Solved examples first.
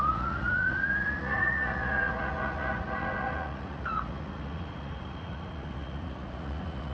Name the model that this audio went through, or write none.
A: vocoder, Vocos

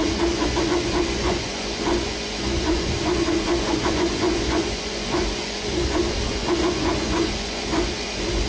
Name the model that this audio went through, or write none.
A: vocoder, Vocos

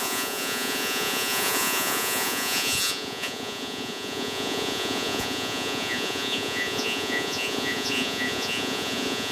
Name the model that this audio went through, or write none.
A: vocoder, Vocos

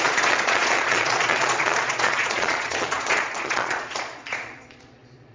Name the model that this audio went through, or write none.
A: vocoder, Vocos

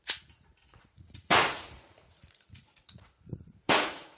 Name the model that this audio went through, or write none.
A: vocoder, Vocos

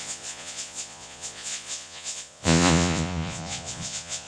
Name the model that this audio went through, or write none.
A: vocoder, Vocos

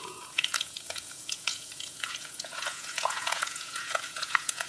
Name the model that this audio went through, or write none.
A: vocoder, Vocos